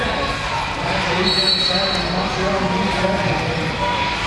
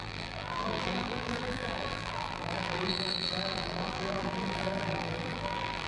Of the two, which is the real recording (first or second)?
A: first